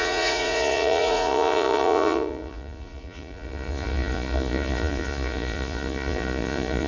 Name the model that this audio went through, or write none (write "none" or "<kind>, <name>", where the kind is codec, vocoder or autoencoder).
vocoder, Vocos